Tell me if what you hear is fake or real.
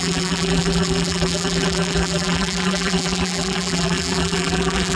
fake